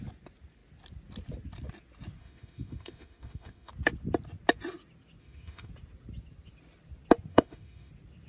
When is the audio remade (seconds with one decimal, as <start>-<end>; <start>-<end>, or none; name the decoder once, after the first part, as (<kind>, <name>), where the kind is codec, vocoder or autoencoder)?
2.2-3.7 (autoencoder, DAC-VAE); 5.2-5.7; 7.3-7.9